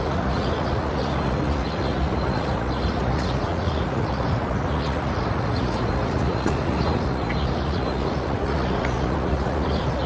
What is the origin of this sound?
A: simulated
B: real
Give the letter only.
A